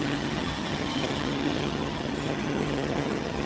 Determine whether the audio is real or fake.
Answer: fake